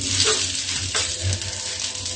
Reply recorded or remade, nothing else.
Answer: recorded